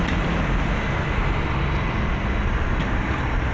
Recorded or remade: recorded